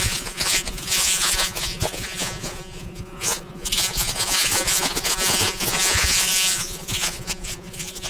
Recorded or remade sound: remade